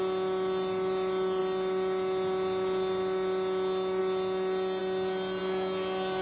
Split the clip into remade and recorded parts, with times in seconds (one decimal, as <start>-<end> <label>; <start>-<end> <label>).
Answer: 0.0-6.2 recorded